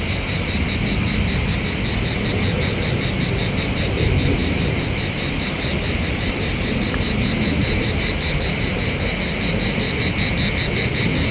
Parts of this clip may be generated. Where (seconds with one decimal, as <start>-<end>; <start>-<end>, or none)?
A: 4.4-8.1